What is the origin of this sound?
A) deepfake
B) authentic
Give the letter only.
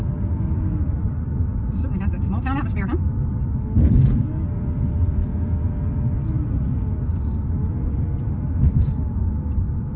B